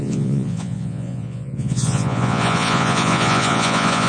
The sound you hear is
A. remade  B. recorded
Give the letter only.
A